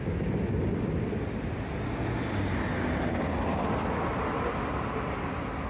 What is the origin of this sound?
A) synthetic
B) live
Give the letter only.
B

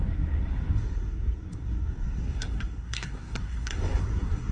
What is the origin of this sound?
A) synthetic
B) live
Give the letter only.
A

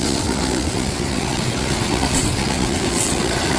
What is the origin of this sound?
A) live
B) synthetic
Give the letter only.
B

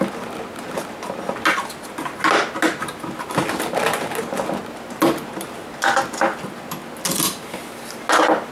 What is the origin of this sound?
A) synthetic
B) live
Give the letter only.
B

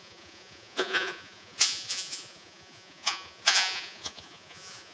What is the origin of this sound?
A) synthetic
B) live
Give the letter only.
A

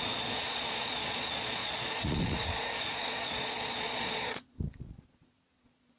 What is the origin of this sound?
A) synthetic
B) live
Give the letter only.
A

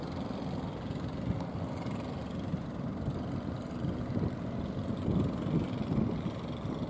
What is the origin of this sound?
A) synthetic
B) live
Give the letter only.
B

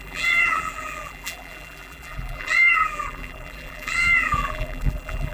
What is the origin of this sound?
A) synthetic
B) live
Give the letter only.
A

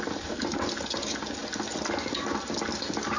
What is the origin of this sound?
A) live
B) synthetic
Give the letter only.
A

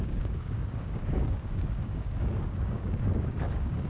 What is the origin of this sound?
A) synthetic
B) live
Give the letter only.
A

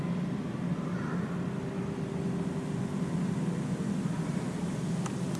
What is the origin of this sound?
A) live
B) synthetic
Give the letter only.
A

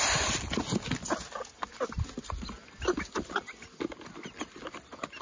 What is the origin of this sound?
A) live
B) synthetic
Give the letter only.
A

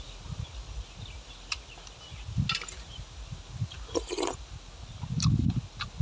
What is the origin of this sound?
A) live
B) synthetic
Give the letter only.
A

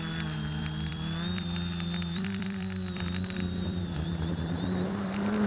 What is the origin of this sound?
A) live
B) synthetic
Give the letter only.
B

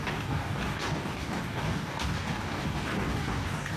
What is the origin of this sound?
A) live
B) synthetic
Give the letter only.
B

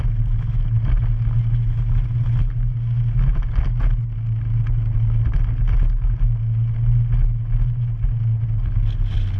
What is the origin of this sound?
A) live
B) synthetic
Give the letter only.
A